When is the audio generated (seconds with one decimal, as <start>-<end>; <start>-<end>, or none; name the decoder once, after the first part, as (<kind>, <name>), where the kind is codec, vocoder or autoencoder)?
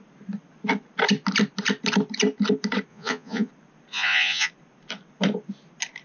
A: 2.9-3.5 (vocoder, Vocos); 3.9-4.5